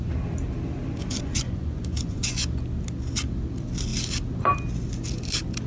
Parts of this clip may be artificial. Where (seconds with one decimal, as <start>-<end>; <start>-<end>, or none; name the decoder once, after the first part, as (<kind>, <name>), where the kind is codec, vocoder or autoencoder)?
1.0-2.4 (vocoder, Vocos)